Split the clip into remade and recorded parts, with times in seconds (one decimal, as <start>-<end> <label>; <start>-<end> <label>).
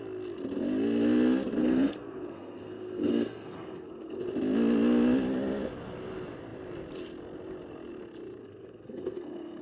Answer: 0.0-1.6 recorded; 1.6-4.2 remade; 4.2-8.4 recorded; 8.4-9.6 remade